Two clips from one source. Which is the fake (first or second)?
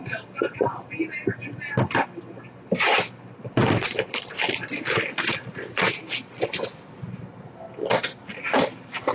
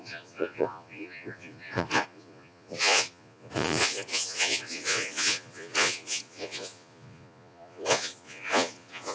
second